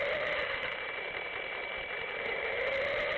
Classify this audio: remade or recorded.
remade